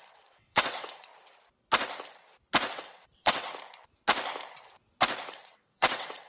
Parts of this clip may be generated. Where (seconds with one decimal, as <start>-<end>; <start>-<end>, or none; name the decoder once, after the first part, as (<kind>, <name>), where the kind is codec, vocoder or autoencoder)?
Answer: 0.0-1.1 (vocoder, WaveNeXt); 2.7-3.5; 5.3-6.3